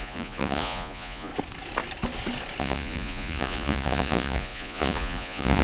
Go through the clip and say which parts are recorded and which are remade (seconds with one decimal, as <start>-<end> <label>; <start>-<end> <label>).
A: 0.0-1.3 remade; 1.3-2.6 recorded; 2.6-5.6 remade

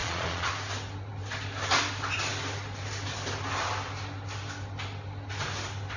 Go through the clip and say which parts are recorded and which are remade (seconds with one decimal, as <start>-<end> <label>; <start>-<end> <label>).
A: 0.0-0.5 remade; 0.5-6.0 recorded

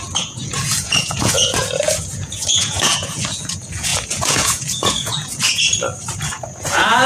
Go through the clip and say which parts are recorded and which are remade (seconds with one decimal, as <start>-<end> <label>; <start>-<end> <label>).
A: 0.0-5.7 remade; 5.7-6.2 recorded; 6.2-7.1 remade